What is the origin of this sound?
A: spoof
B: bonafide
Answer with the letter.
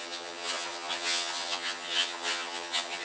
A